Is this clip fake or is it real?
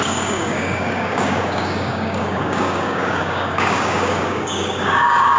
fake